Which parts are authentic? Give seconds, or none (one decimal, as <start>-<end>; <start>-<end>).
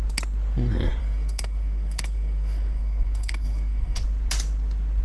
0.0-1.0; 4.0-5.0